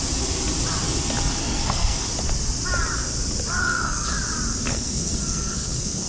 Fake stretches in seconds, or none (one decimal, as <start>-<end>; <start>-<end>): 1.4-2.0; 3.6-4.1; 4.7-6.1

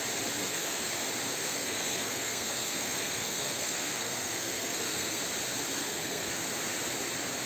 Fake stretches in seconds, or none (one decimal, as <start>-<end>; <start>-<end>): 0.4-0.9; 1.3-5.2; 5.8-6.4